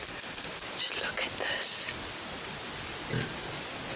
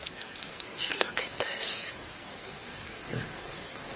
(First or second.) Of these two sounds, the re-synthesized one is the second